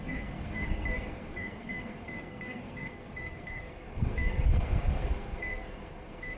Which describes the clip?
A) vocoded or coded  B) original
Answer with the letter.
A